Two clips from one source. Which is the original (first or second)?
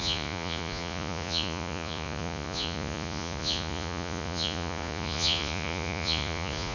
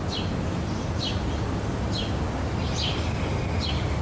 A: second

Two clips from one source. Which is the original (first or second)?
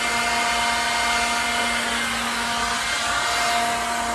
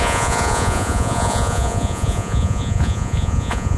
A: first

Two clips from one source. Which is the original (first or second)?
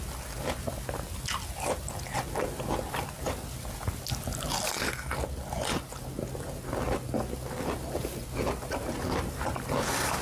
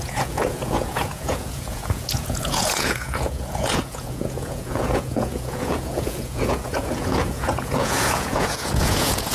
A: first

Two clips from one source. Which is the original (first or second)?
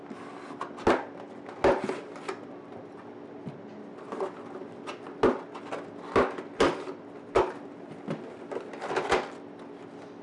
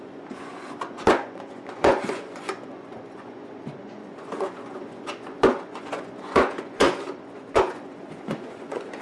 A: first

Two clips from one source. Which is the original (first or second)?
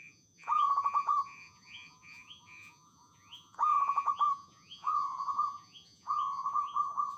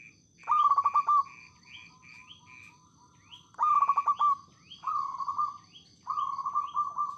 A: second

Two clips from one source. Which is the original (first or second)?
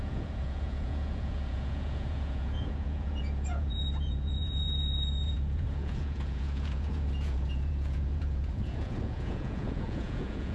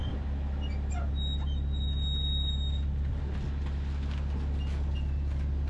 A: second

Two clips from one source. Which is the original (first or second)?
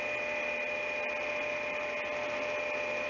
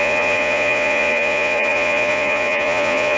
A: first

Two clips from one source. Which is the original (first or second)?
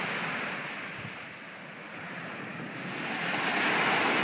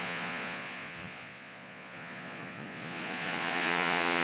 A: first